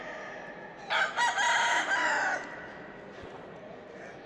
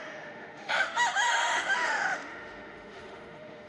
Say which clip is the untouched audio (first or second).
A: first